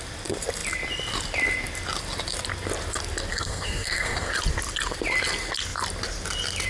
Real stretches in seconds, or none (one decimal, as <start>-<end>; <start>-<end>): 0.0-3.3; 4.3-6.7